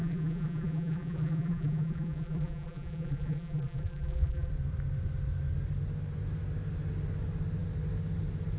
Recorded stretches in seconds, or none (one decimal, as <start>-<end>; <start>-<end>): 4.5-8.6